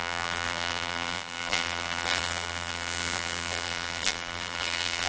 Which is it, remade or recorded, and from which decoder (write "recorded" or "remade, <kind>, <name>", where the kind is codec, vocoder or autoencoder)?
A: remade, vocoder, BigVGAN v2